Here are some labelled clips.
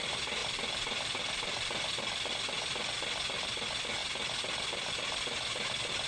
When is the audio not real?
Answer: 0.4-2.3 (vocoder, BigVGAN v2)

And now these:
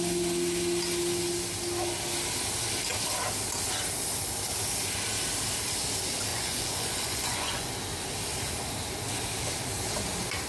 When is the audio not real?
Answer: 6.3-7.7 (vocoder, Vocos)